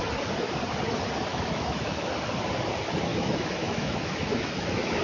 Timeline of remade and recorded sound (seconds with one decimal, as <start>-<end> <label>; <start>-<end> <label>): 0.0-1.3 recorded; 1.3-2.1 remade; 2.1-3.1 recorded; 3.1-5.0 remade